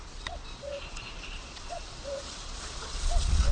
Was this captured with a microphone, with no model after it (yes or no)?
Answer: no